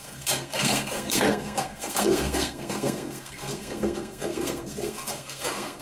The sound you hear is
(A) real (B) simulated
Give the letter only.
B